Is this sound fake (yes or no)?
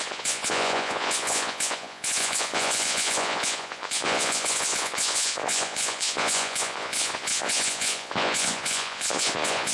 yes